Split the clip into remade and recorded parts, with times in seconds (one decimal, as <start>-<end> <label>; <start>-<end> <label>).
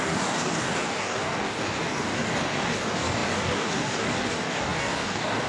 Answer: 0.0-5.5 remade